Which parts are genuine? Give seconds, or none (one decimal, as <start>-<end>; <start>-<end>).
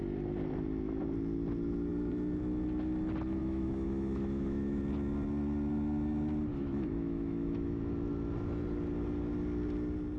0.0-3.4; 4.8-6.5; 7.8-10.2